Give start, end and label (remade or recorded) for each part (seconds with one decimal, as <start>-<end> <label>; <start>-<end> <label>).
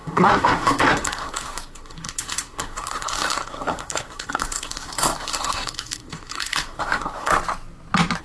0.0-7.3 remade; 7.3-8.2 recorded